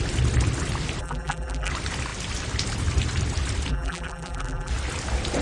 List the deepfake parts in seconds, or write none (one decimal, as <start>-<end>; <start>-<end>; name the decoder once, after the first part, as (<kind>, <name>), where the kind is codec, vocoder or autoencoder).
1.0-1.7 (vocoder, BigVGAN v2); 3.7-4.7